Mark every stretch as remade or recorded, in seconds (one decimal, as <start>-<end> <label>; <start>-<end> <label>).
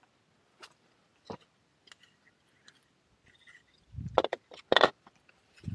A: 0.0-5.7 recorded